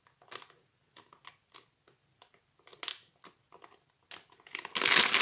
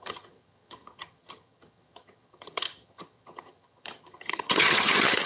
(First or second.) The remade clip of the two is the second